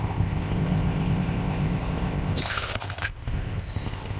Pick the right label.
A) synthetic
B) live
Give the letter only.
A